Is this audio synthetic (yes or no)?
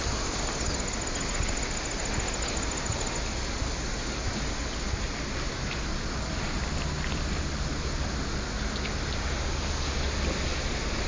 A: no